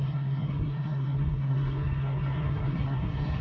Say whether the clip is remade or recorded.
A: remade